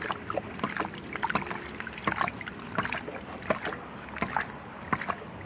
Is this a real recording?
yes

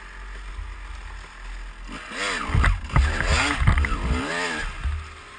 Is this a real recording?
yes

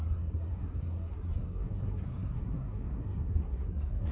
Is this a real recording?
no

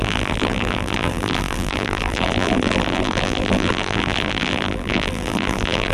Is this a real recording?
no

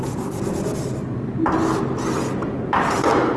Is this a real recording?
yes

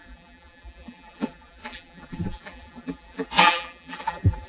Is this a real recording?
no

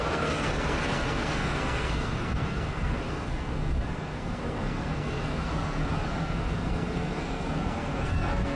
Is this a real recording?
no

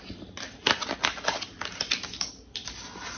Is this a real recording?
yes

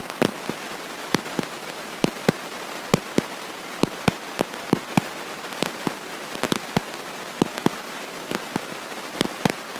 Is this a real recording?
yes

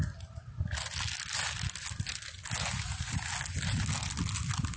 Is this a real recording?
yes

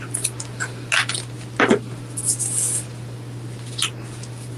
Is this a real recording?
yes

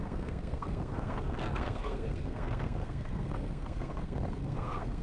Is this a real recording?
no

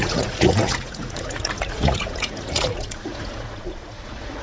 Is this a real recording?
no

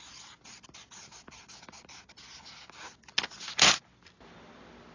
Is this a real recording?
yes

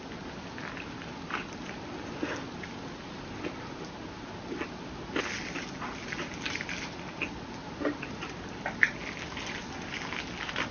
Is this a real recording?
yes